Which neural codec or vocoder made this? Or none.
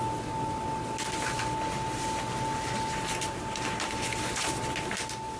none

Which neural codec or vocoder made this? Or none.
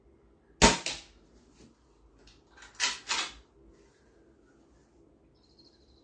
none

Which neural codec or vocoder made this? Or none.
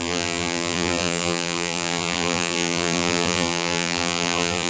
vocoder, BigVGAN v2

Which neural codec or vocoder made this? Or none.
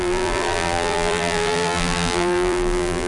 vocoder, BigVGAN v2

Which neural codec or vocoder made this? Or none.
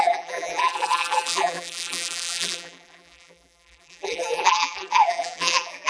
vocoder, BigVGAN v2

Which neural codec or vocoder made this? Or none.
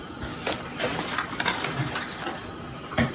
none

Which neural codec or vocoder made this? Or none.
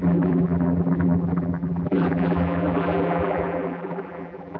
vocoder, BigVGAN v2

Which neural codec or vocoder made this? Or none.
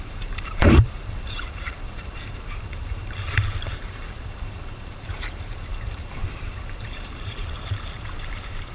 vocoder, BigVGAN v2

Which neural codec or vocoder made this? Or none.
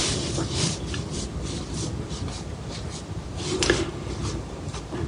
vocoder, BigVGAN v2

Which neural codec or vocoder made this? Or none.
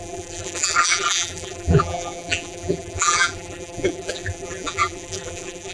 vocoder, BigVGAN v2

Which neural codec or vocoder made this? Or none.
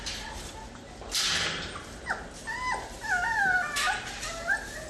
none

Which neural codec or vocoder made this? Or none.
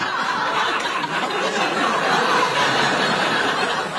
vocoder, BigVGAN v2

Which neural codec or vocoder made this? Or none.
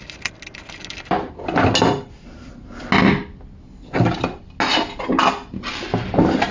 none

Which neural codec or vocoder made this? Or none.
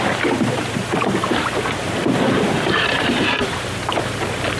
vocoder, BigVGAN v2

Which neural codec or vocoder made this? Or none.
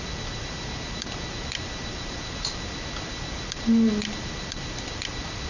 vocoder, BigVGAN v2